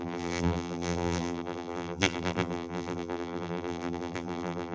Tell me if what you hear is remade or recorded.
remade